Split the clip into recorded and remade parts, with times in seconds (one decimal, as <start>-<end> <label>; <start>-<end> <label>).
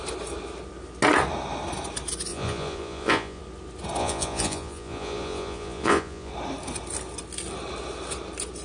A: 0.0-2.3 recorded; 2.3-3.4 remade; 3.4-4.0 recorded; 4.0-6.3 remade; 6.3-8.6 recorded